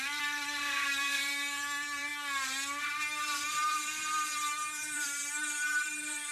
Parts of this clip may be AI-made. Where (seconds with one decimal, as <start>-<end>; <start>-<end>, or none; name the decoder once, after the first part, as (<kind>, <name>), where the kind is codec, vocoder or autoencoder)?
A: 0.0-2.1 (vocoder, BigVGAN v2); 3.5-6.3